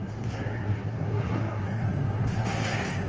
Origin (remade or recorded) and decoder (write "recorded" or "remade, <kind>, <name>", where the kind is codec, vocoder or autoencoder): remade, codec, SNAC